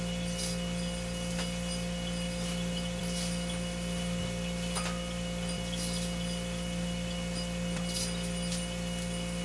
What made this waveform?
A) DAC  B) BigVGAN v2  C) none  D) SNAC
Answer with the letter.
C